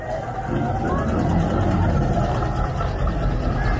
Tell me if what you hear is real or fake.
real